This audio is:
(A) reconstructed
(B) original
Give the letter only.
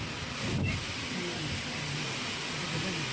B